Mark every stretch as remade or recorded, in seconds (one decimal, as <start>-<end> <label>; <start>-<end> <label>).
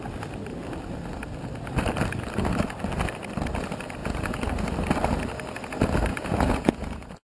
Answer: 0.0-4.0 recorded; 4.0-4.5 remade; 4.5-6.1 recorded; 6.1-7.3 remade